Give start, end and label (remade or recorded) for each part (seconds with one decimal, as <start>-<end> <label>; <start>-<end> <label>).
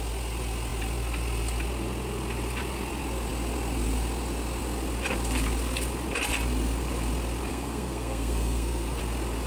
0.0-7.5 recorded; 7.5-9.0 remade; 9.0-9.5 recorded